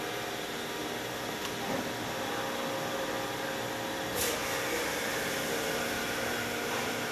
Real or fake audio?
real